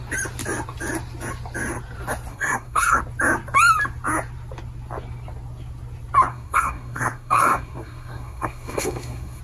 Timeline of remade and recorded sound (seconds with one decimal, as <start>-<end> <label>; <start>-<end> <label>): 0.0-2.3 recorded; 2.3-3.0 remade; 3.0-6.3 recorded; 6.3-9.4 remade